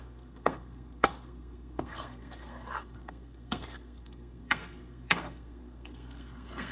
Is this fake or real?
fake